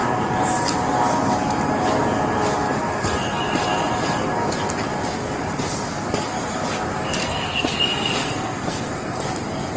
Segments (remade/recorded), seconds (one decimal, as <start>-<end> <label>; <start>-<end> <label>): 0.0-7.2 recorded; 7.2-9.2 remade; 9.2-9.8 recorded